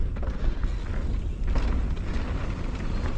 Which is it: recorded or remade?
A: recorded